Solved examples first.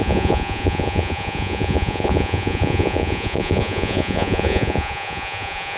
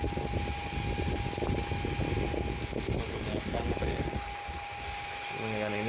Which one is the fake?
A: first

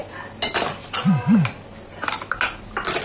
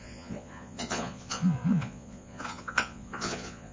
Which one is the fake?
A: second